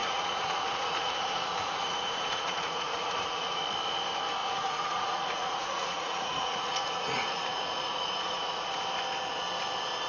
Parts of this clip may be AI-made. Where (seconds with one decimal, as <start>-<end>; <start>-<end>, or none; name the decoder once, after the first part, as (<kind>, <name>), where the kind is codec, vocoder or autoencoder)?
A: 0.0-3.6 (vocoder, Vocos); 4.4-8.7